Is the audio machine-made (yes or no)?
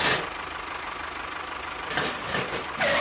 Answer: no